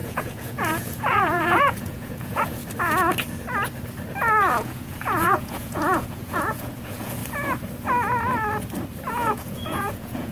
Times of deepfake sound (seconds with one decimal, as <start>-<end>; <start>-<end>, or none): 0.0-2.6; 4.5-7.2; 9.1-10.3